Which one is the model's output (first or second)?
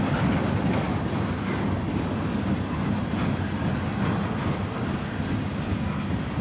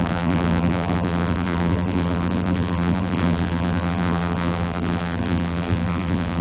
second